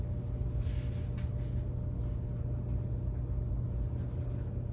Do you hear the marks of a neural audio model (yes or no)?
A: no